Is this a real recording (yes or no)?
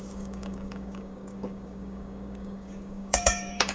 no